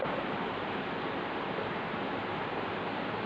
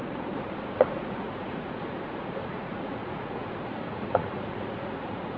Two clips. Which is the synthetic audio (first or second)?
second